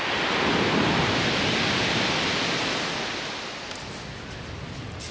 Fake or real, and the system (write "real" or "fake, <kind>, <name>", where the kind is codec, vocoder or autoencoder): real